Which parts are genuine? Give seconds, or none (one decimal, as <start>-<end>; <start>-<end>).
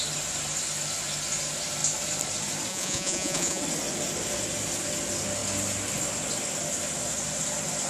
0.0-2.7; 3.6-7.9